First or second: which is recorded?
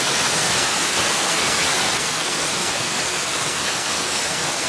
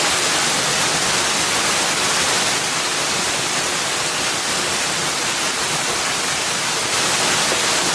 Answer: second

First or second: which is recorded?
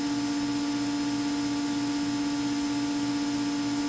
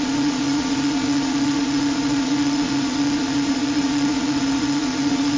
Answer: first